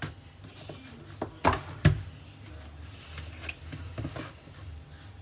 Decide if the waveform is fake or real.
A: real